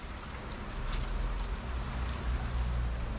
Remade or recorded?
recorded